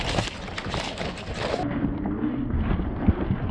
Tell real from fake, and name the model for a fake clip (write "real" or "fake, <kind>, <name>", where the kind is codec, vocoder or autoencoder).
real